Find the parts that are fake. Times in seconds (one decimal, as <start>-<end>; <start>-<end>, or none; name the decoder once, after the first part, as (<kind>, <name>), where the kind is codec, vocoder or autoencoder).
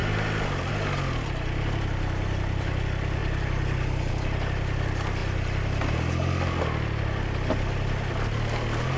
none